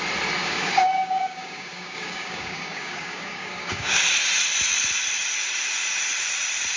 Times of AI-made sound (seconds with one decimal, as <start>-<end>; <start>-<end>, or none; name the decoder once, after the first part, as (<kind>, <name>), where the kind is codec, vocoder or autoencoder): 0.4-4.0 (codec, DAC)

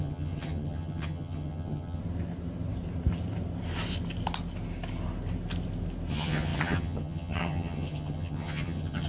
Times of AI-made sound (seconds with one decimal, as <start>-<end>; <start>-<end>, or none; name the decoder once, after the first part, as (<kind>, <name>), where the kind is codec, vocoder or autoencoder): 0.0-2.0 (vocoder, HiFi-GAN); 6.1-9.1